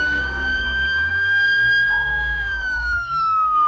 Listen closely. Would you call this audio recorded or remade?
remade